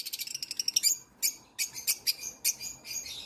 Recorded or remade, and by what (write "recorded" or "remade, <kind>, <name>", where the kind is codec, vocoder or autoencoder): recorded